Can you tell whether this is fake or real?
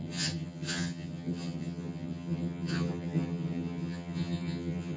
fake